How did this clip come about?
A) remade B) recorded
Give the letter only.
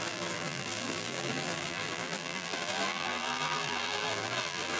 A